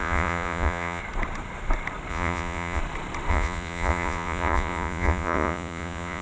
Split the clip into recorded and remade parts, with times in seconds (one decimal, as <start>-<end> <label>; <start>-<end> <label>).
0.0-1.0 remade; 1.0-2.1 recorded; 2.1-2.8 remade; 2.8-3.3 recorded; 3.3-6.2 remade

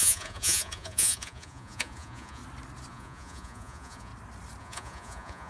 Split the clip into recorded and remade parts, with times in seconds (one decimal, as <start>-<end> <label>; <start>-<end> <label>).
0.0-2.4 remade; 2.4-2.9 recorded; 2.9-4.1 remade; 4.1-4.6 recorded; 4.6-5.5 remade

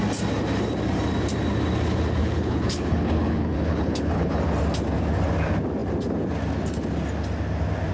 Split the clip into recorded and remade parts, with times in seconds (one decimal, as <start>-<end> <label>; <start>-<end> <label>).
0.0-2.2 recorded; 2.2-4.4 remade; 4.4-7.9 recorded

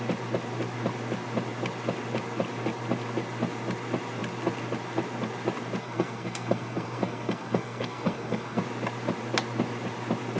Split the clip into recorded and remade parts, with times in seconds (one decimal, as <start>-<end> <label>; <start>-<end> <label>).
0.0-5.8 recorded; 5.8-8.6 remade; 8.6-10.4 recorded

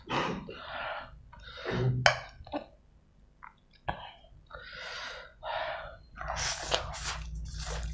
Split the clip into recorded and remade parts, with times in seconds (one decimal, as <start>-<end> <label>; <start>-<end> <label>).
0.0-5.3 recorded; 5.3-6.0 remade; 6.0-7.9 recorded